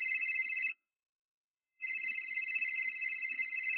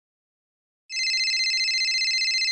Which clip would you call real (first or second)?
second